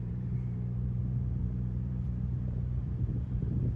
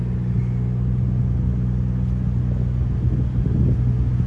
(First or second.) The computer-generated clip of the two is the first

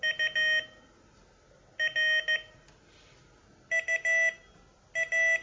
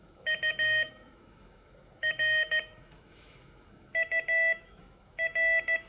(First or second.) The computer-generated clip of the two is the second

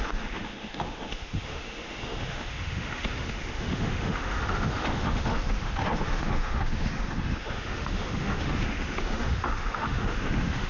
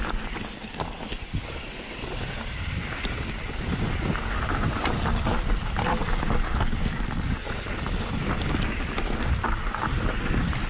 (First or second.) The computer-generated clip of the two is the first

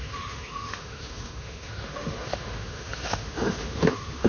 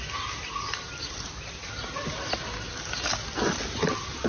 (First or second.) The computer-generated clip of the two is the first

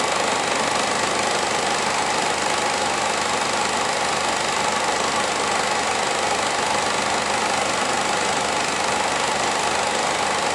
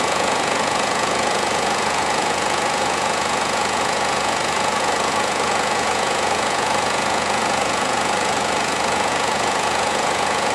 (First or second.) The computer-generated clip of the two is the second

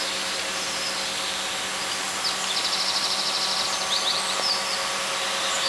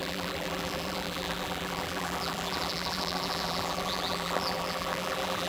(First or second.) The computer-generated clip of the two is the second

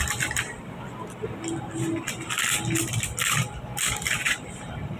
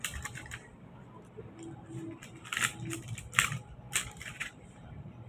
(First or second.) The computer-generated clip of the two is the second